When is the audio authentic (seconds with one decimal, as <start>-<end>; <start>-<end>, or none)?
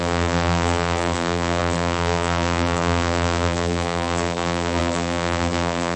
none